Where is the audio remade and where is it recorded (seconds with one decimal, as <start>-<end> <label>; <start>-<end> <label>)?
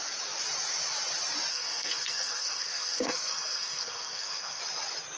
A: 0.0-1.5 recorded; 1.5-4.6 remade; 4.6-5.2 recorded